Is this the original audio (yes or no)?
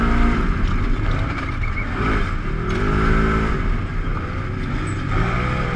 yes